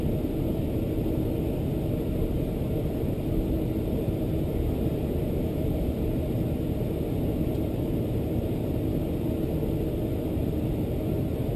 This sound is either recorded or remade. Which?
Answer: recorded